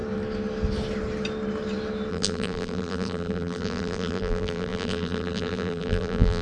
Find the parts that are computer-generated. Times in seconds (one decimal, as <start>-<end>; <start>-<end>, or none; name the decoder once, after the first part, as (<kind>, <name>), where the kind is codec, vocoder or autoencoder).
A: 2.1-6.4 (vocoder, BigVGAN v2)